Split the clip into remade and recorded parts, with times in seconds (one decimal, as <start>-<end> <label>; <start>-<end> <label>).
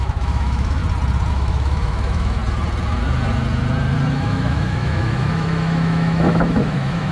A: 0.0-0.8 remade; 0.8-1.3 recorded; 1.3-2.4 remade; 2.4-4.1 recorded; 4.1-7.1 remade